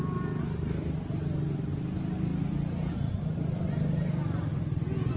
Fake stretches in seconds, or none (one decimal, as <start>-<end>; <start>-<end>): none